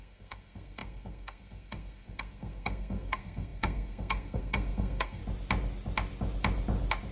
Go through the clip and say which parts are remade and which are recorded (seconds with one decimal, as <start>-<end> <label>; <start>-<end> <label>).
0.0-5.2 remade; 5.2-7.1 recorded